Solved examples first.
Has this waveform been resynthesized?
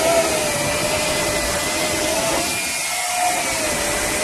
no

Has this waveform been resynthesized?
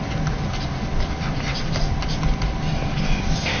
no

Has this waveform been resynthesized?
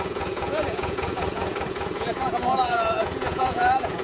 yes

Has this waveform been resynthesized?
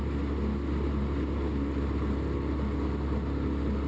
no